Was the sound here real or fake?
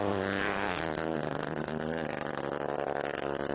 real